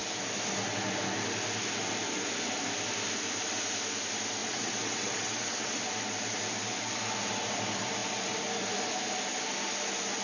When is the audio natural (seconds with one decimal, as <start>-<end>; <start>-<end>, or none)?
0.0-4.4; 5.8-10.2